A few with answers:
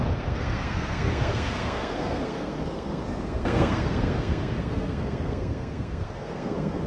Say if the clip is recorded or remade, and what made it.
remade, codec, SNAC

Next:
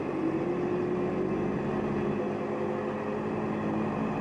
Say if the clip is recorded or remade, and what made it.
recorded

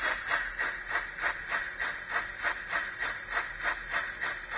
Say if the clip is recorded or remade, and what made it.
recorded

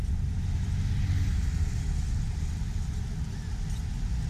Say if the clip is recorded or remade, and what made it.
recorded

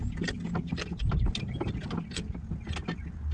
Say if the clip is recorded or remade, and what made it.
recorded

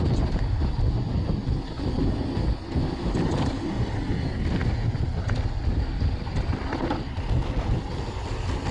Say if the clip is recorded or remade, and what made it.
recorded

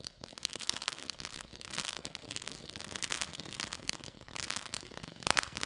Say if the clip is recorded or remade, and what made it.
remade, codec, SNAC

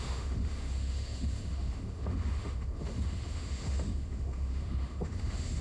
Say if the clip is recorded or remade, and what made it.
remade, autoencoder, DAC-VAE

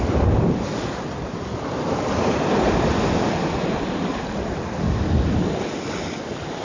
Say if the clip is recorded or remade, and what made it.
recorded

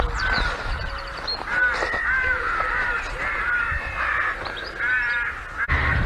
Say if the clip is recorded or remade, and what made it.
recorded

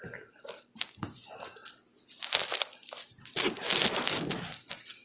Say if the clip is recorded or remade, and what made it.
recorded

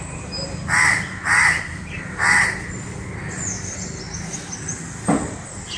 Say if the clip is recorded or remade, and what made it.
recorded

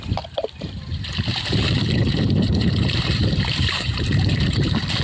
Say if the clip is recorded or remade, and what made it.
remade, vocoder, BigVGAN v2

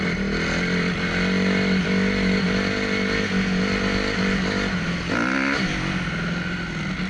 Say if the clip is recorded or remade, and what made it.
recorded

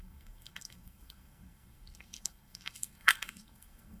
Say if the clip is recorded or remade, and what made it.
remade, codec, SNAC